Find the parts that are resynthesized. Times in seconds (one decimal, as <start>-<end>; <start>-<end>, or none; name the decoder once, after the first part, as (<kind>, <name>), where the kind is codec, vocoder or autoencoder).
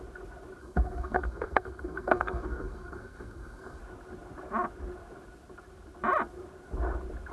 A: 0.6-3.8 (codec, SNAC)